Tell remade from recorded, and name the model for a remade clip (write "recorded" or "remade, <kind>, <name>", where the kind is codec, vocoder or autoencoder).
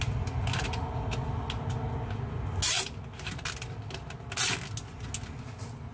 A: recorded